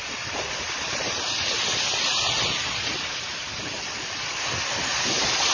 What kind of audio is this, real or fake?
fake